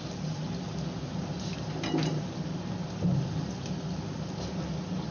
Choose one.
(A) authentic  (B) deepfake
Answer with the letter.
A